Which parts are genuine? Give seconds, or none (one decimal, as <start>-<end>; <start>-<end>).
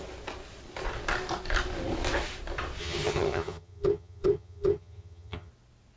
0.0-2.8; 5.5-6.0